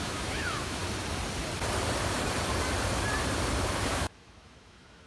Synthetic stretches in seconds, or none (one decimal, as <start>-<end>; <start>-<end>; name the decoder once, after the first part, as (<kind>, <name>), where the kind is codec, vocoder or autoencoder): 0.0-0.8 (autoencoder, DAC-VAE); 3.9-5.1